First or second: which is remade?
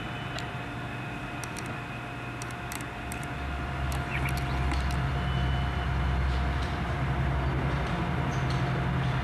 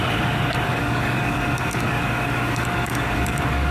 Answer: second